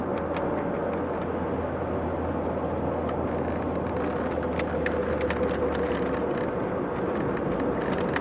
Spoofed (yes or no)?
no